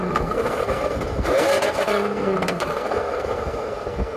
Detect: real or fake fake